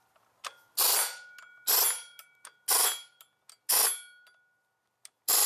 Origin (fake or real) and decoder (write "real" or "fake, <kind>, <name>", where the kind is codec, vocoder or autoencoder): real